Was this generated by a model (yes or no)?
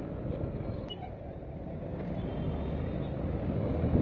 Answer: no